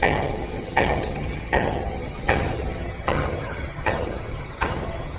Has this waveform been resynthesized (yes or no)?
yes